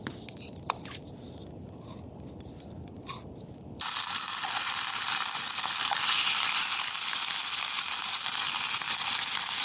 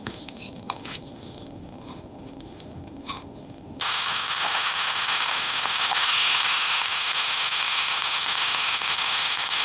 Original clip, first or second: first